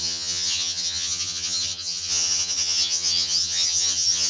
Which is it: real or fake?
fake